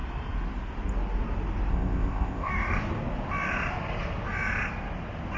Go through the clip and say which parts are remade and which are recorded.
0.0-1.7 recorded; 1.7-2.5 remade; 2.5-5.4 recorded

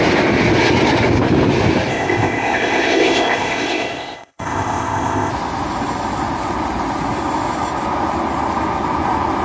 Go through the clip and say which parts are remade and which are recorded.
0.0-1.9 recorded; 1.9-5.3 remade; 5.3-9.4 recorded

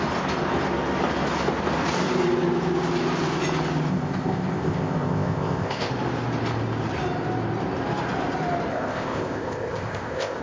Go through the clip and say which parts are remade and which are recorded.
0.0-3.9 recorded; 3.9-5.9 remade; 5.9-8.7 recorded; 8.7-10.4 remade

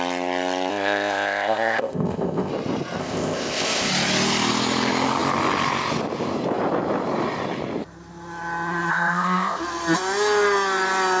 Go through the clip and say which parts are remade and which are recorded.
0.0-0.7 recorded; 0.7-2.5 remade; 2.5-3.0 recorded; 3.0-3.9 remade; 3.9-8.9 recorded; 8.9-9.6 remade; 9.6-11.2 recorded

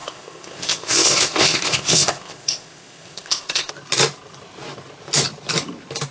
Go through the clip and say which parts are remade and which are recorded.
0.0-3.7 remade; 3.7-6.1 recorded